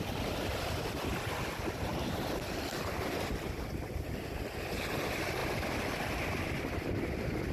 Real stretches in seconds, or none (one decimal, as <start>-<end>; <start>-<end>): 0.0-1.9; 5.0-7.5